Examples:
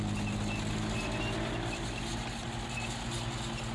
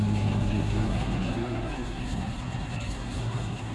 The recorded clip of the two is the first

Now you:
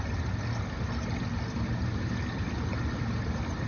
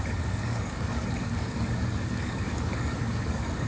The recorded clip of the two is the first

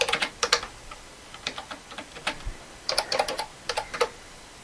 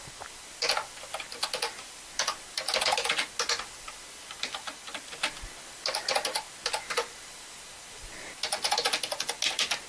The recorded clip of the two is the second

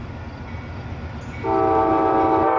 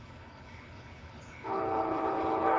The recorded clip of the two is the first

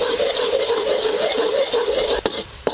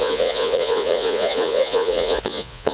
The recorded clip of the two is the first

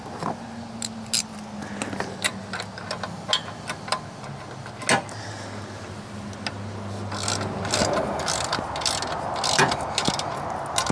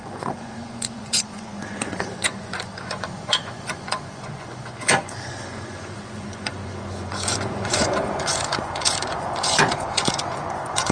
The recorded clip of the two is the first